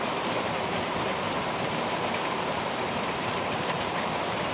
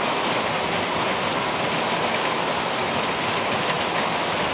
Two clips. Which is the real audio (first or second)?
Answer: second